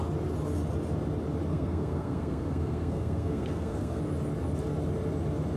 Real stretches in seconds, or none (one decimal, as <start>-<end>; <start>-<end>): 0.0-1.5; 4.0-5.6